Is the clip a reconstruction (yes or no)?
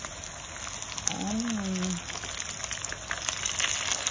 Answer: no